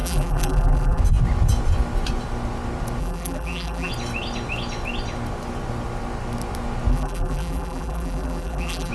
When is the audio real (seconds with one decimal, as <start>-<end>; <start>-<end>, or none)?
1.0-3.0; 3.9-6.9